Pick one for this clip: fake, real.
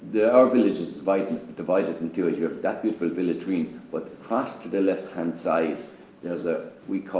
real